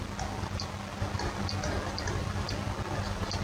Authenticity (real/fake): real